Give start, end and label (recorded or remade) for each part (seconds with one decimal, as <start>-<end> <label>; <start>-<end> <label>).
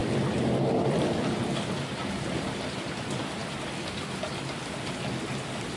0.0-5.8 recorded